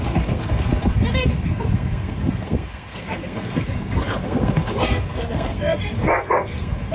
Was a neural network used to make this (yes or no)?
yes